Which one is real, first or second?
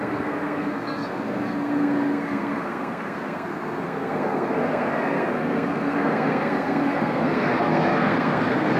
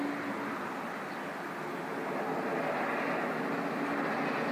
second